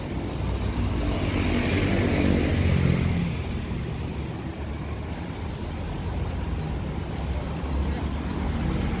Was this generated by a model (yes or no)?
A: no